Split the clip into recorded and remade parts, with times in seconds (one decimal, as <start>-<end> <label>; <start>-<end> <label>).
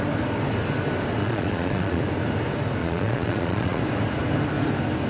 0.0-1.2 recorded; 1.2-2.0 remade; 2.0-2.8 recorded; 2.8-3.8 remade; 3.8-5.1 recorded